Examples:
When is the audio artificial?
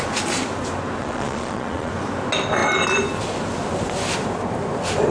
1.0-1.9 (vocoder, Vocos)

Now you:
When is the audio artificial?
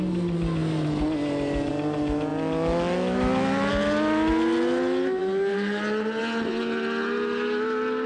none